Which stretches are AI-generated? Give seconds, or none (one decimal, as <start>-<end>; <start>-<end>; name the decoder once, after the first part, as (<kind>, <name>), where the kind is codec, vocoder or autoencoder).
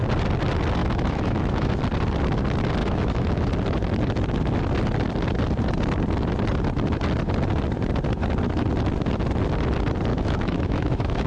0.8-1.7 (autoencoder, DAC-VAE); 2.8-3.5; 10.1-11.3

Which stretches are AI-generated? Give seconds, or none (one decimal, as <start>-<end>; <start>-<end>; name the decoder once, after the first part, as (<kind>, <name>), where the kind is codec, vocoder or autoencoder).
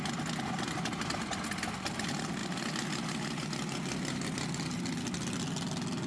none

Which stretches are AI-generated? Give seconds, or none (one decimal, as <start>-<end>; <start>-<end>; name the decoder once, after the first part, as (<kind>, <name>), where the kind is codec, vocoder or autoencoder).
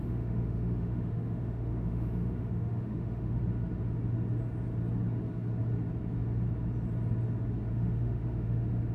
0.0-3.4 (autoencoder, DAC-VAE); 7.7-8.9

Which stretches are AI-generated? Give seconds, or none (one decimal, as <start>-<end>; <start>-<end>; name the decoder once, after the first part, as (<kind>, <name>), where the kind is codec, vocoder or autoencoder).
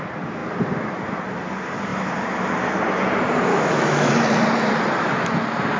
3.5-4.1 (autoencoder, DAC-VAE)